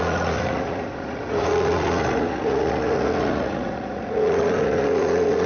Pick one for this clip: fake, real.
fake